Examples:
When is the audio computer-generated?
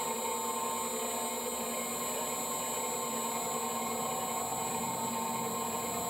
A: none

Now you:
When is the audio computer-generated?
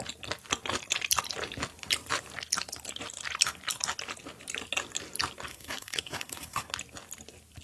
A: 5.5-6.6 (codec, SNAC)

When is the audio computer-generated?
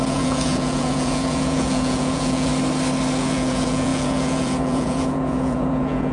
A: 0.0-2.5 (vocoder, Vocos); 3.2-6.1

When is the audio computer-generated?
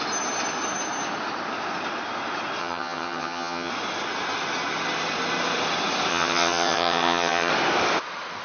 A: 2.6-3.7 (vocoder, HiFi-GAN); 6.1-7.5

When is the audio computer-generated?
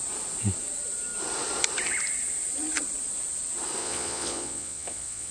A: 3.8-5.3 (vocoder, Vocos)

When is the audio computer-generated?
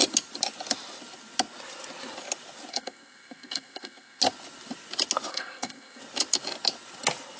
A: 2.7-4.2 (codec, SNAC); 5.3-6.0